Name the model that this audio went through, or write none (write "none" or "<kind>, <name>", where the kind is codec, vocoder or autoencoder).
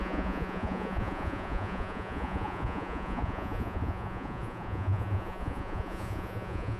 vocoder, Vocos